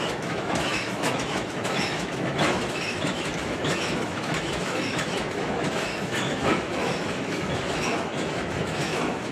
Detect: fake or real fake